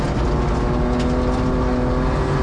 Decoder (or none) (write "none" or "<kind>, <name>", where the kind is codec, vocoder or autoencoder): none